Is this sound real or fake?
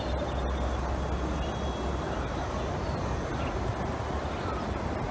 real